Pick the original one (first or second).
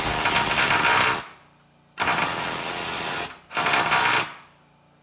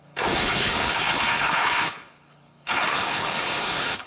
first